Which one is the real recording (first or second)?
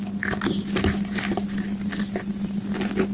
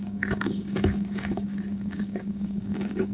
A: first